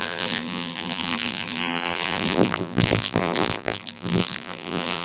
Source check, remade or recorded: remade